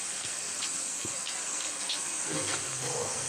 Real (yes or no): no